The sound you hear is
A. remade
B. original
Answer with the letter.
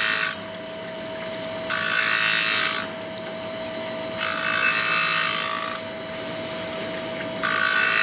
B